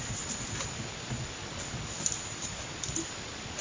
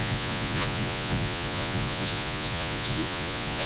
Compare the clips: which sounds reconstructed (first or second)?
second